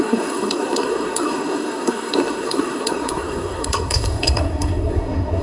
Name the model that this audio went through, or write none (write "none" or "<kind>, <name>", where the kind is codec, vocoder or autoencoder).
codec, SNAC